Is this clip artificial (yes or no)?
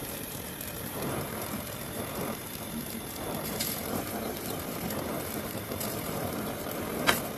yes